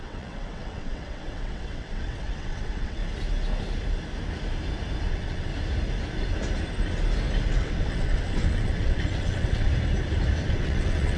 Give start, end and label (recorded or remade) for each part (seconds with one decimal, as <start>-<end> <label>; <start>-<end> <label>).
0.0-3.0 remade; 3.0-5.1 recorded; 5.1-5.5 remade; 5.5-7.5 recorded; 7.5-9.7 remade; 9.7-10.5 recorded; 10.5-11.2 remade